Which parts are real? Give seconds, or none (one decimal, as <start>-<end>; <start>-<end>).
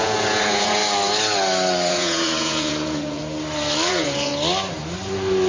0.8-1.9; 3.2-3.9; 4.3-5.5